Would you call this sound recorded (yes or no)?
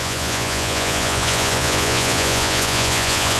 no